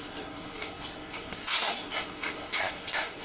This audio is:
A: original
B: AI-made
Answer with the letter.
B